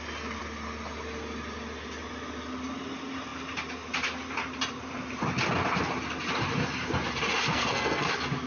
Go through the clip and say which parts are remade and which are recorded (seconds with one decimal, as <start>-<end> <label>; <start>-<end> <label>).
0.0-7.5 recorded; 7.5-8.1 remade; 8.1-8.5 recorded